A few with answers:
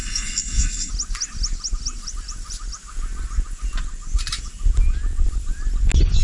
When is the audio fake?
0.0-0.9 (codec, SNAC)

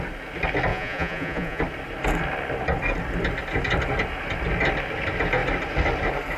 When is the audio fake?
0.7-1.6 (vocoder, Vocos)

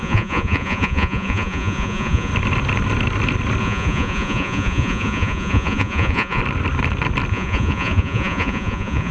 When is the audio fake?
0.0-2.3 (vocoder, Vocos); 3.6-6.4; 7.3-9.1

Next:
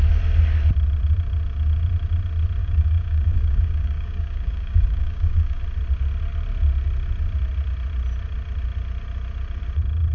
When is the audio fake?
2.6-5.6 (codec, DAC)